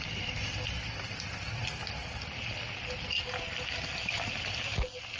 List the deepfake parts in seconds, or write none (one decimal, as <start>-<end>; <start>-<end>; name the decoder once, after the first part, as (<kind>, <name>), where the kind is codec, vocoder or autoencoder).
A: 0.0-2.0 (vocoder, BigVGAN v2)